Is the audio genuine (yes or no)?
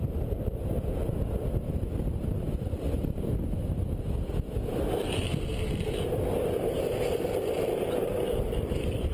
no